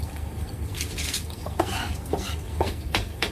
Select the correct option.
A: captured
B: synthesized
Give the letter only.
B